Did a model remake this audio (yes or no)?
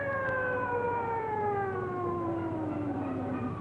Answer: yes